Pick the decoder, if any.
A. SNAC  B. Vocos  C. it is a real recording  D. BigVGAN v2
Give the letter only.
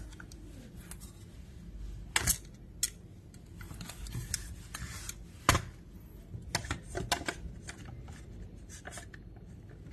C